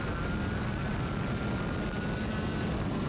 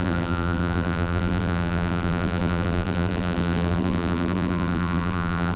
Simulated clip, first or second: second